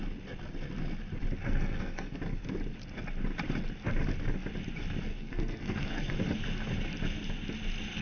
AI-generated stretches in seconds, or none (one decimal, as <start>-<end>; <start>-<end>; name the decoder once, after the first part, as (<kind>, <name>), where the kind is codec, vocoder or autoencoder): 1.4-2.2 (codec, SNAC); 5.1-6.1